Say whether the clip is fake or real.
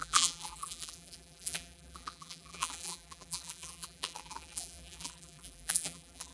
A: fake